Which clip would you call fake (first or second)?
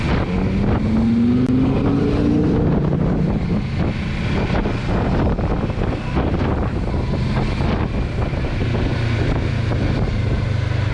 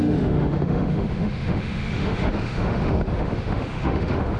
second